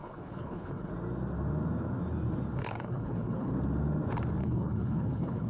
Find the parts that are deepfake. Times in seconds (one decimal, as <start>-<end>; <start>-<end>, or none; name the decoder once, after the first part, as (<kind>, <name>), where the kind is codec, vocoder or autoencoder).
0.0-0.9 (codec, HILCodec); 2.6-3.5; 4.4-5.5